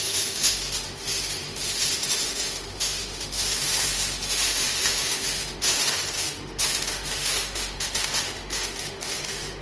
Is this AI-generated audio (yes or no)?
yes